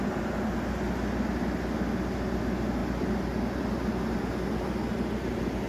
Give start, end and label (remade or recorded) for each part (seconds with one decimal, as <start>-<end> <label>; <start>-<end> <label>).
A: 0.0-5.7 recorded